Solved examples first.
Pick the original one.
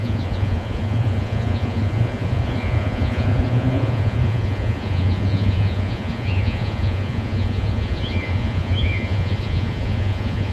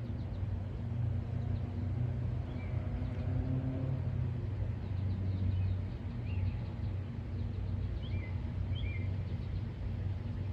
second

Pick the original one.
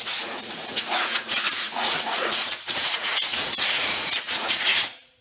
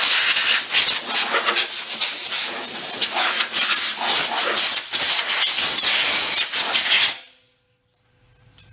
second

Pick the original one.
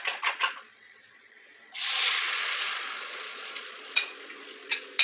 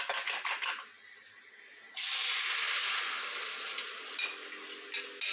second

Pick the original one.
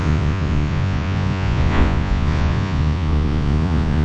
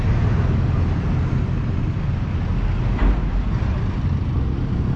second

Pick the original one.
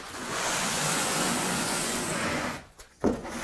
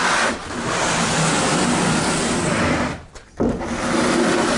second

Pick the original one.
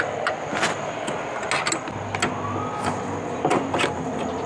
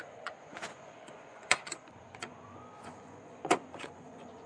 first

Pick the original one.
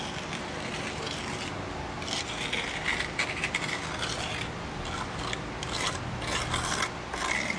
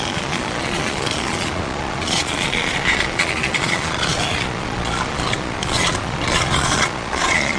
first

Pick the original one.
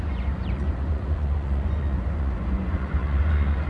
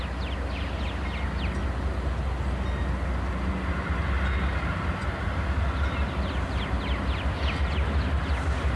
second